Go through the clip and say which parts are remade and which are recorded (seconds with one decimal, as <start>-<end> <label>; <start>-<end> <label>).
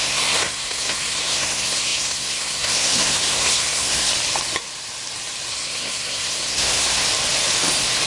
0.0-4.1 remade; 4.1-5.5 recorded; 5.5-7.0 remade; 7.0-8.1 recorded